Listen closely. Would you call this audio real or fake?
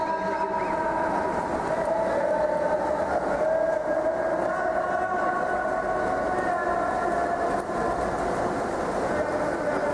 real